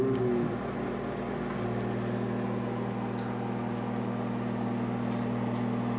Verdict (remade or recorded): recorded